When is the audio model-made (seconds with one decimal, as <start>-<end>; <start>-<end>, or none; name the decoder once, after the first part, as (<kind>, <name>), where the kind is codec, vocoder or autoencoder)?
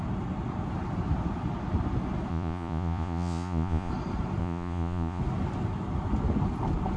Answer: 2.3-3.9 (vocoder, Vocos); 4.4-5.2